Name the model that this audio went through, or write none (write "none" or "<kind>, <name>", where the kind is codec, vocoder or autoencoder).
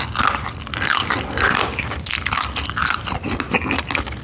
none